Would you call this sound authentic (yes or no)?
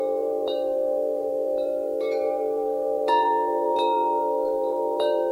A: no